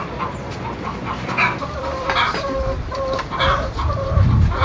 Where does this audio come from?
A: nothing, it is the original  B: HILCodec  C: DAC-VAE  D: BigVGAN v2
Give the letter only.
D